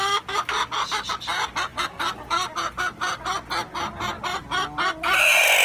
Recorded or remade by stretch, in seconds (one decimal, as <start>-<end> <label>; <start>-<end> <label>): 0.0-5.6 recorded